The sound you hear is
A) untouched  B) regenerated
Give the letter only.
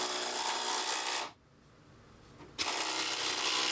A